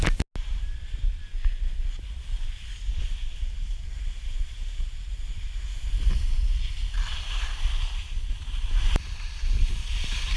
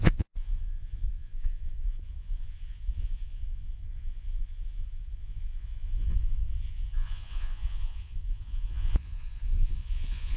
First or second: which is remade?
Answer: second